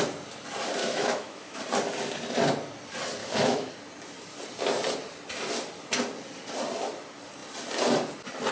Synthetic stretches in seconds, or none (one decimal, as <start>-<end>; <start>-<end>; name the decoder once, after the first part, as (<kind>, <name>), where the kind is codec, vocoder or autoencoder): 0.8-1.6 (autoencoder, DAC-VAE); 3.2-3.7